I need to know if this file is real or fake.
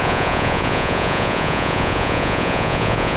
fake